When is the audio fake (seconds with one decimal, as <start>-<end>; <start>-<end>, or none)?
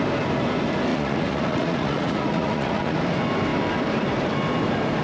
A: 0.9-3.0